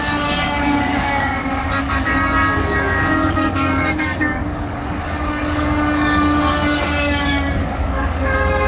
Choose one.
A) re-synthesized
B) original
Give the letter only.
A